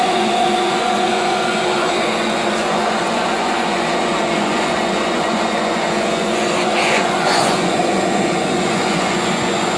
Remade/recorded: remade